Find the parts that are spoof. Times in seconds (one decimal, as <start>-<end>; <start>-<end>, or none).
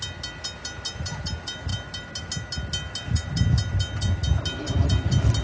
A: none